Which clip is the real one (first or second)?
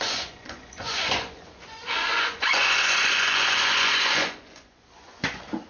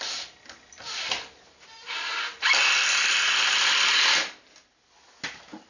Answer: second